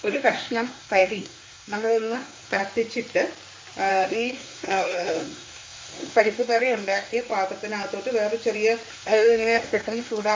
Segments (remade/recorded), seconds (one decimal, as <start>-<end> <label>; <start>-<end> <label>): 0.0-2.6 remade; 2.6-3.9 recorded; 3.9-7.3 remade; 7.3-8.9 recorded; 8.9-10.3 remade